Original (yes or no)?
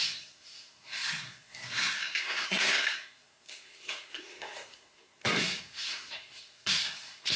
no